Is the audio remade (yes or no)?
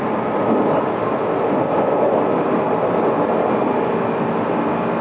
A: no